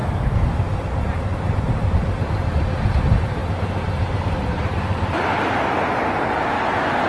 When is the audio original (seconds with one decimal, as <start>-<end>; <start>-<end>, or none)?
0.0-7.1